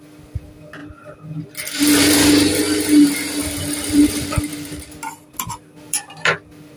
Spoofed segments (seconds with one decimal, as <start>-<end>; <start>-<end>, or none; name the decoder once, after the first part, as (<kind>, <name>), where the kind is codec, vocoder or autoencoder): 3.4-6.8 (vocoder, BigVGAN v2)

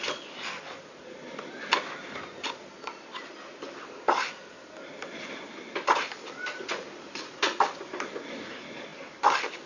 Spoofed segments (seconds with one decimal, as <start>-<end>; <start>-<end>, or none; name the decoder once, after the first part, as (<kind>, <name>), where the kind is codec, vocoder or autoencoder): none

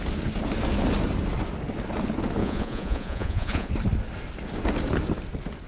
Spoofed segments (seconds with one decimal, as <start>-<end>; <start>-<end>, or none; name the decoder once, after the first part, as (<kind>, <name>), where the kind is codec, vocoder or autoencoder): 2.4-3.7 (vocoder, Vocos)

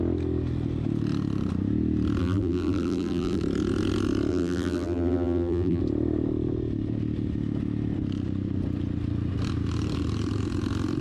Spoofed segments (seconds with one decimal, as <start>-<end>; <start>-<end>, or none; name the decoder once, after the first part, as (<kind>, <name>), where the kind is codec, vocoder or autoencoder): 2.2-3.4 (vocoder, BigVGAN v2); 4.3-5.8